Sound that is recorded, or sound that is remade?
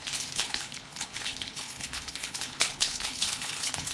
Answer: remade